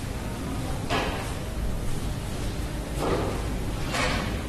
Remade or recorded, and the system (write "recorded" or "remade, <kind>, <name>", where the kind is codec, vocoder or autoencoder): recorded